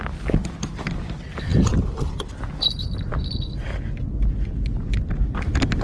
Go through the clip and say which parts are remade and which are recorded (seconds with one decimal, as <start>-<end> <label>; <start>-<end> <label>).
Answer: 0.0-5.8 recorded